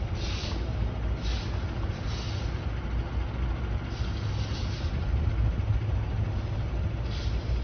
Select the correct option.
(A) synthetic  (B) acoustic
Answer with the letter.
B